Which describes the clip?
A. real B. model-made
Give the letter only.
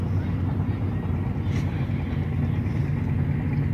A